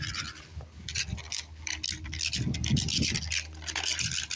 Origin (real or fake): real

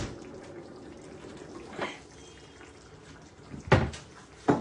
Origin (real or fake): real